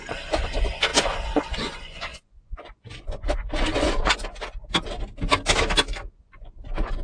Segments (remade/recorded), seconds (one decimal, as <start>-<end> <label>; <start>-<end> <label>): 0.0-4.2 remade; 4.2-5.9 recorded; 5.9-7.0 remade